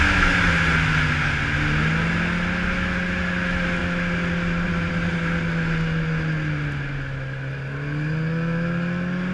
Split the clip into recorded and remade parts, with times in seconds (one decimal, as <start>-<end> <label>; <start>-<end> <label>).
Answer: 0.0-9.3 recorded